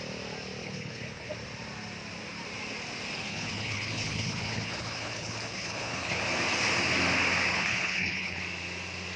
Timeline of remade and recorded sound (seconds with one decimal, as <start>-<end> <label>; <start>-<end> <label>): 0.0-0.6 recorded; 0.6-1.3 remade; 1.3-3.3 recorded; 3.3-6.2 remade; 6.2-7.5 recorded; 7.5-8.4 remade; 8.4-9.2 recorded